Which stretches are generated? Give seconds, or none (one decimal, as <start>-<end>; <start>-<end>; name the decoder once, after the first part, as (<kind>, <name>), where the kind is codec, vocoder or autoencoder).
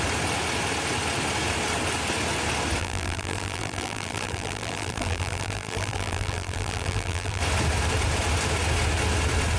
2.8-7.4 (vocoder, BigVGAN v2)